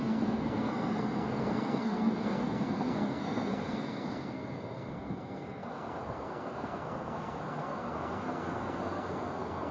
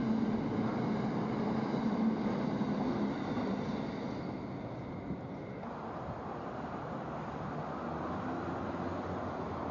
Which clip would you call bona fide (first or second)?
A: second